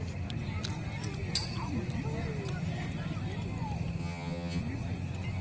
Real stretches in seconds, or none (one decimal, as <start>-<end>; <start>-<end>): 0.0-4.0; 4.6-5.4